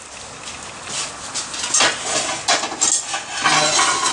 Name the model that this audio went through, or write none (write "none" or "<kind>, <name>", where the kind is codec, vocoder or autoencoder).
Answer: none